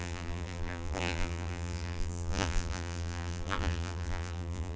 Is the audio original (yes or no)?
no